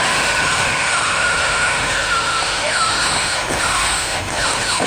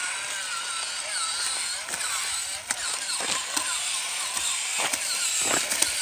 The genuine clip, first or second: second